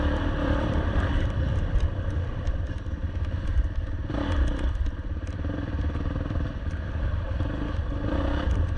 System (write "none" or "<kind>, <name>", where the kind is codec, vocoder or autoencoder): vocoder, BigVGAN v2